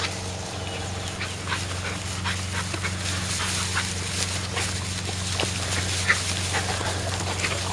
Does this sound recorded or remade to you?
recorded